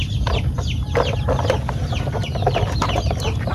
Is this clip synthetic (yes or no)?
no